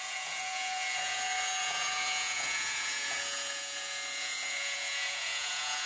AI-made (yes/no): yes